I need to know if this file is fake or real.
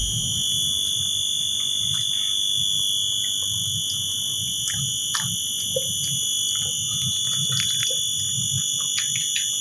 real